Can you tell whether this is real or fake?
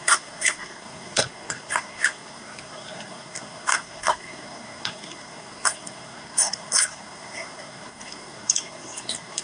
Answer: fake